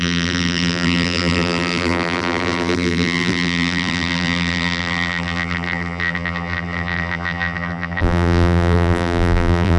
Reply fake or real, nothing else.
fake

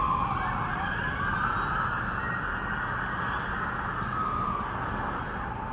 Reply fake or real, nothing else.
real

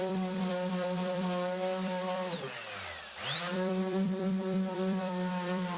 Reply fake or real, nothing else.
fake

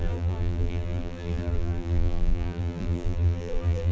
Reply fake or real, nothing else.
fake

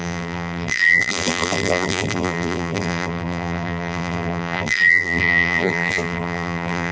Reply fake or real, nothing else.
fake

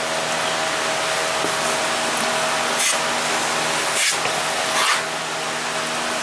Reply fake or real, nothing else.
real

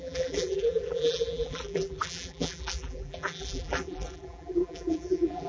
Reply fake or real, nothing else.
fake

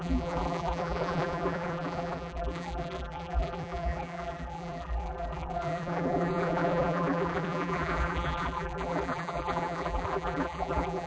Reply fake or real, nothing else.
fake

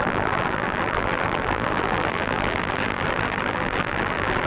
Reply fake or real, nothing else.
fake